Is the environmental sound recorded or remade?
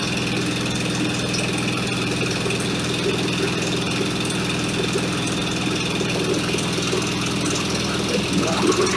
recorded